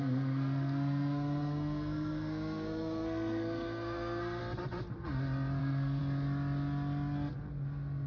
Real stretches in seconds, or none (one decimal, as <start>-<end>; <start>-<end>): 4.4-5.6; 6.0-8.1

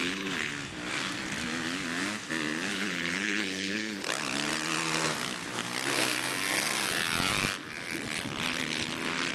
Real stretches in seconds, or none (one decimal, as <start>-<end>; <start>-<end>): 0.5-2.7; 4.1-9.3

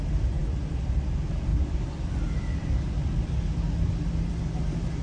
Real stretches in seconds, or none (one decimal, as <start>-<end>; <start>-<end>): 0.0-5.0

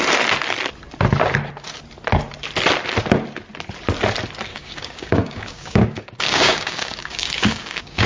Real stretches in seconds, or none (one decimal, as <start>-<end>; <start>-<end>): 0.0-4.5

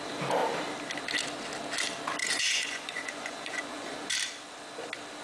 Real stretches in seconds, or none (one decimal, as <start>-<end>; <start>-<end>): 0.0-2.2; 4.1-5.2

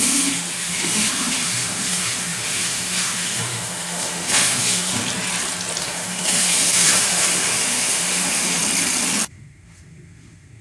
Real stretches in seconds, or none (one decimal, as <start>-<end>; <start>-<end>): 5.0-5.8; 8.6-9.3